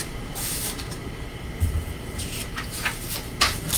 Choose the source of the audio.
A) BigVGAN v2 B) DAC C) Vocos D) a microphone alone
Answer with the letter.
A